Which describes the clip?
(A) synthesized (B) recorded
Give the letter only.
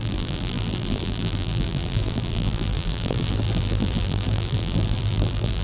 A